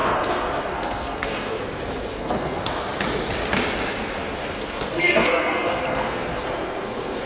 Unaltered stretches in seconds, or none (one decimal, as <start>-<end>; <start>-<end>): 1.6-2.1; 2.8-4.4